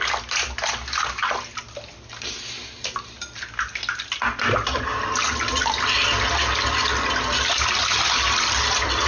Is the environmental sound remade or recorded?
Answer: recorded